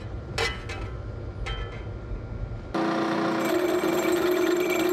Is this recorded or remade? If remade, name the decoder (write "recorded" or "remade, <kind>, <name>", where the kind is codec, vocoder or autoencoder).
recorded